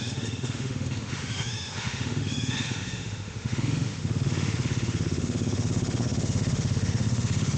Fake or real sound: fake